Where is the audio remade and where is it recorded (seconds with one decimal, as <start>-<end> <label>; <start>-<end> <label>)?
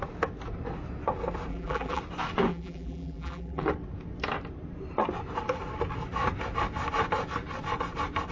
0.0-1.5 recorded; 1.5-2.0 remade; 2.0-2.5 recorded; 2.5-3.6 remade; 3.6-8.3 recorded